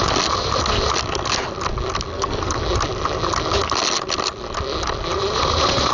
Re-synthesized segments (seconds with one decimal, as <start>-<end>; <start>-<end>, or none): 2.1-2.6